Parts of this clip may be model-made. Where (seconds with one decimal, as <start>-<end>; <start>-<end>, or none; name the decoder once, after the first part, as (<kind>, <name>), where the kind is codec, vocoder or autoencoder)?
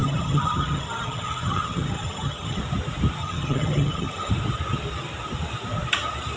0.0-2.6 (vocoder, HiFi-GAN); 3.2-4.3